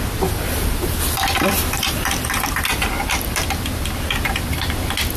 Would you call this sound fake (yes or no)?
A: yes